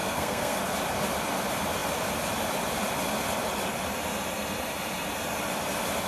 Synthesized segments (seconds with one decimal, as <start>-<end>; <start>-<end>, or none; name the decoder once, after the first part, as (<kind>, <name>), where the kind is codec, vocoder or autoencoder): 0.0-0.6 (codec, SNAC)